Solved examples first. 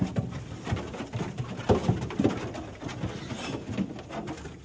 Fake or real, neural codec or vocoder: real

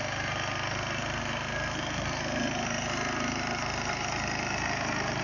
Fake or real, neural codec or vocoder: real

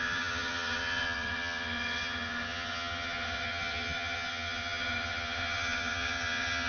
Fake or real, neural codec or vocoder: fake, vocoder, HiFi-GAN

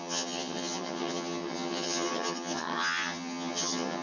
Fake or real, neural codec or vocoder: fake, vocoder, HiFi-GAN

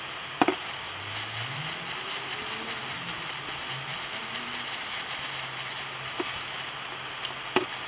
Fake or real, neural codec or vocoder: real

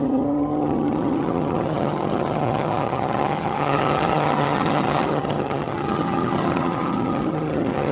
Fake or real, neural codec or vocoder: fake, vocoder, HiFi-GAN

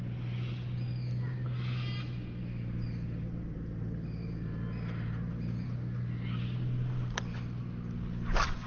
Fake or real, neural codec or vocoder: real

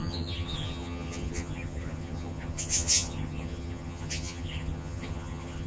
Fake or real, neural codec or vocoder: fake, vocoder, HiFi-GAN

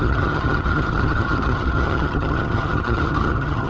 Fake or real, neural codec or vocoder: fake, vocoder, HiFi-GAN